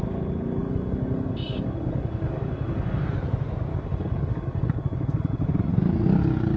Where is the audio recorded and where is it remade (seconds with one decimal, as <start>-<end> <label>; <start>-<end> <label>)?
0.0-0.6 recorded; 0.6-3.0 remade; 3.0-3.7 recorded; 3.7-5.7 remade; 5.7-6.6 recorded